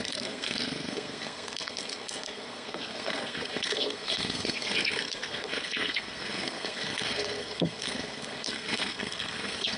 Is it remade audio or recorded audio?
remade